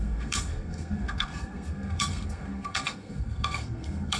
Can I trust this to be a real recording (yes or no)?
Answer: no